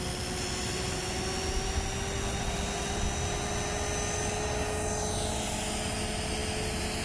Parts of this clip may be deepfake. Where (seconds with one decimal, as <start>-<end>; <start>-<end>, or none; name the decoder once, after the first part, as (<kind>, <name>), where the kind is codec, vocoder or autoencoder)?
none